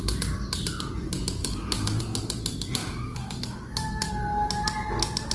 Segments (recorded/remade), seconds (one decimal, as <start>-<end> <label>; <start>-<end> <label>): 0.0-1.4 recorded; 1.4-2.0 remade; 2.0-2.8 recorded; 2.8-4.1 remade; 4.1-5.3 recorded